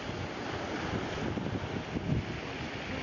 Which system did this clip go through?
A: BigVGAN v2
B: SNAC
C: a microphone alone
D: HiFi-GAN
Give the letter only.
C